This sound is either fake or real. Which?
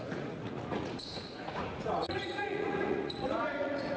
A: fake